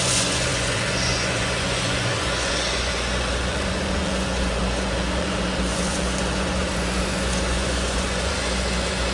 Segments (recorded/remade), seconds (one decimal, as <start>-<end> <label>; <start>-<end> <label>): 0.0-9.1 remade